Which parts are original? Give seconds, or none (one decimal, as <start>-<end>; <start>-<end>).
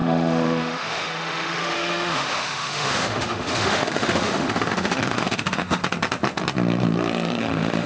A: 5.8-7.4